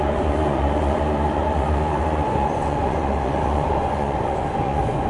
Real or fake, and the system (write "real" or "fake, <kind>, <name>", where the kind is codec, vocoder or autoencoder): fake, vocoder, Vocos